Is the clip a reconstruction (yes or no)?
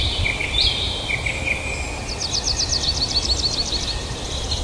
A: no